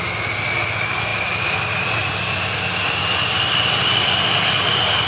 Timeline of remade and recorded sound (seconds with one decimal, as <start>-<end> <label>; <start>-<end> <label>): 0.0-5.1 recorded